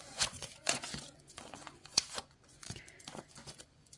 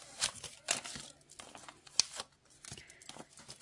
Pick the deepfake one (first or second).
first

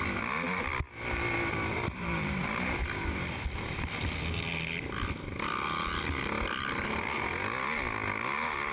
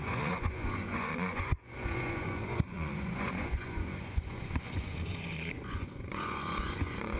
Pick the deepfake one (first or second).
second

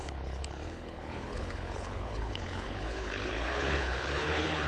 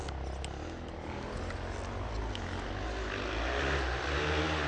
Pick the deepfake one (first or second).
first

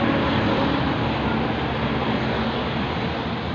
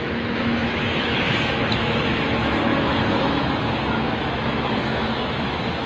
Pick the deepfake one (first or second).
second